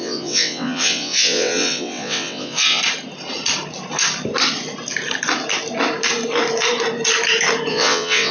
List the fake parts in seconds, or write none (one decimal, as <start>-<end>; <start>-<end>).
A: 0.0-2.8; 7.7-8.3